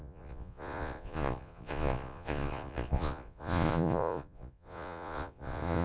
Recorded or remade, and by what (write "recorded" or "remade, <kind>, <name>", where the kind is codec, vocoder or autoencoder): remade, vocoder, Vocos